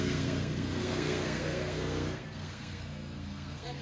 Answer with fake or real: fake